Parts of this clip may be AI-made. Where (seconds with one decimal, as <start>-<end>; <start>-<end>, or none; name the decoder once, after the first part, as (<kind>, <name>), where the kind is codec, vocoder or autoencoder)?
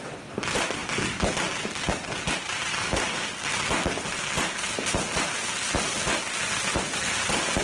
none